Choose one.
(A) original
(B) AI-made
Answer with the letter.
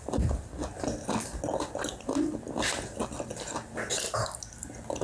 A